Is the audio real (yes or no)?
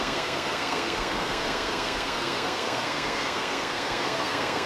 no